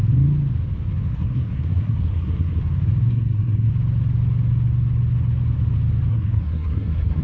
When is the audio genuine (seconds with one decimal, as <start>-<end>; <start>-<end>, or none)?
0.0-1.1; 2.6-3.1; 3.7-6.1

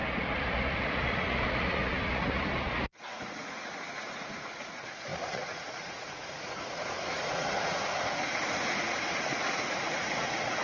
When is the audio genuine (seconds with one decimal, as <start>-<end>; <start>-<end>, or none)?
none

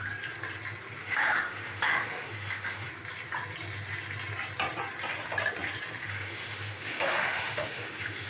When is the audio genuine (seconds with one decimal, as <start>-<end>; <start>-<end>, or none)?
0.0-1.0; 2.9-6.0

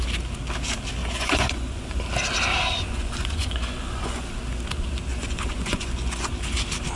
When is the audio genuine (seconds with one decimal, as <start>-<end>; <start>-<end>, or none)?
0.0-1.0; 2.0-2.7; 4.3-5.1; 6.3-7.0